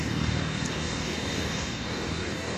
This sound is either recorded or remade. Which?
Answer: remade